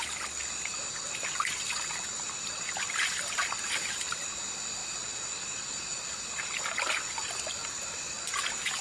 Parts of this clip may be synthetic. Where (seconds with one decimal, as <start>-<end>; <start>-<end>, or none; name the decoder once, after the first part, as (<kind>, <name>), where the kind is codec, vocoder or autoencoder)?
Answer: none